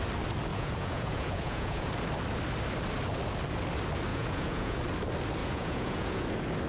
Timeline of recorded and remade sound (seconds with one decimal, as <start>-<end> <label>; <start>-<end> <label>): 0.0-0.5 recorded; 0.5-1.9 remade; 1.9-4.1 recorded; 4.1-4.8 remade; 4.8-5.4 recorded; 5.4-6.2 remade; 6.2-6.7 recorded